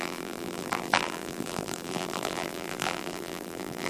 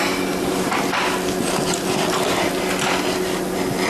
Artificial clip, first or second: first